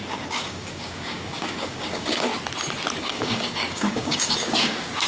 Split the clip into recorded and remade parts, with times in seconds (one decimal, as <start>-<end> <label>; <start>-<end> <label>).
0.0-2.3 remade; 2.3-3.0 recorded; 3.0-5.1 remade